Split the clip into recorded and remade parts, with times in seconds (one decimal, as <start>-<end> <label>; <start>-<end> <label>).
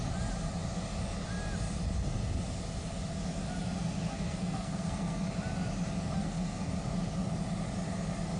0.0-4.1 recorded; 4.1-5.3 remade; 5.3-6.2 recorded; 6.2-6.7 remade; 6.7-8.4 recorded